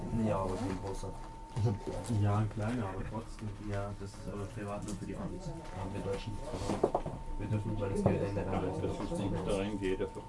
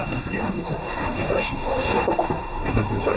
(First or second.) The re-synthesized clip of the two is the second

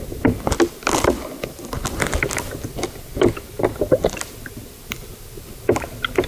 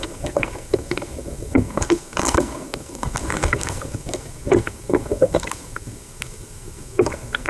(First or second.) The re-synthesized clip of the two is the second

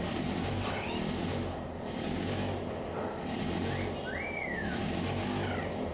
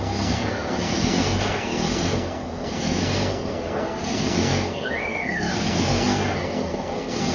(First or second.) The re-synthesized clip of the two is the second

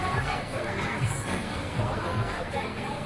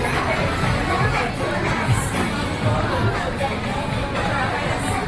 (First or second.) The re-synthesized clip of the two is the first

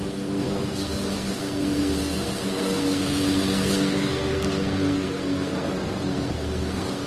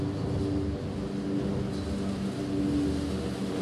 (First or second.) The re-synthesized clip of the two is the first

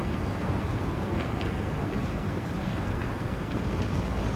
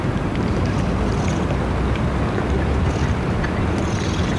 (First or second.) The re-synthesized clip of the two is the first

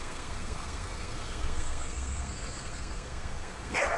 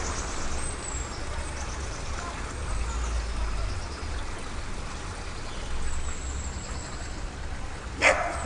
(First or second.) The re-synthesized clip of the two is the first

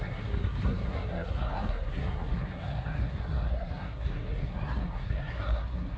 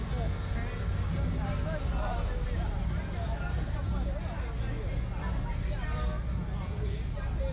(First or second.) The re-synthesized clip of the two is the first